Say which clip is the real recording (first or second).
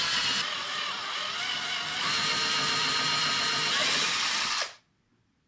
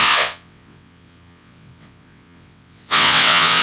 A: first